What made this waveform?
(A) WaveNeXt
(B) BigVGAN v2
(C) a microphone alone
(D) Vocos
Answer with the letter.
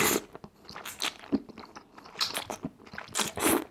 C